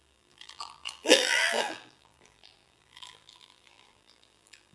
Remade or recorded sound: remade